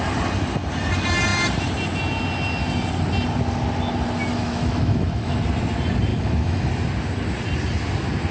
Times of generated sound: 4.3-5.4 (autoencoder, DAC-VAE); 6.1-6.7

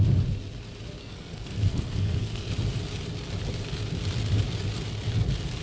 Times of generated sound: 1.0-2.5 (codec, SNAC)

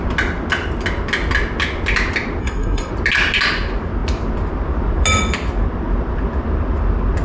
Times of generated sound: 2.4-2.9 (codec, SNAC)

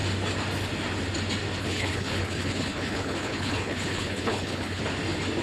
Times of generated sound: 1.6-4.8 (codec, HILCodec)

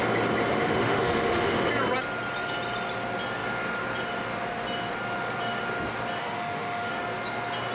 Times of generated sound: 0.5-1.7 (autoencoder, DAC-VAE); 6.2-6.9

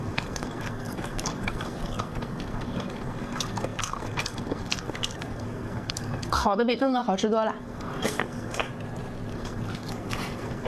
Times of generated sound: 0.0-7.0 (codec, SNAC); 7.6-8.7; 9.3-10.7

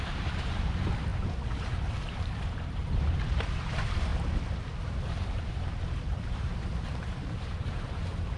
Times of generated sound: 0.0-4.1 (vocoder, BigVGAN v2); 4.9-8.4